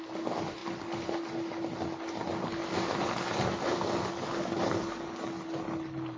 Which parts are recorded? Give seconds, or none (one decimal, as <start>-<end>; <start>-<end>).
0.0-6.2